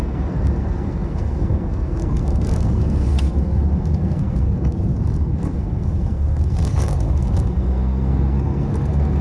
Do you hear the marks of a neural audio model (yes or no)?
yes